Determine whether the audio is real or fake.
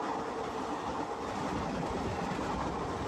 real